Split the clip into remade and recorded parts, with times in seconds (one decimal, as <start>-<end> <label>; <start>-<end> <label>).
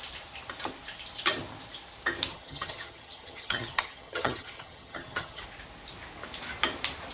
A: 0.0-2.3 recorded; 2.3-5.4 remade; 5.4-7.1 recorded